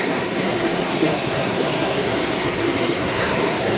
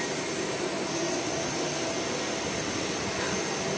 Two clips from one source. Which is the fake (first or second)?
first